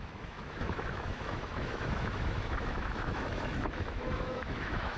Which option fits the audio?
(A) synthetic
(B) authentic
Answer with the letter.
A